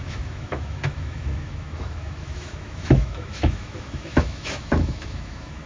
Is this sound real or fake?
fake